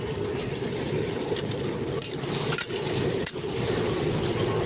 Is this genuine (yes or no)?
yes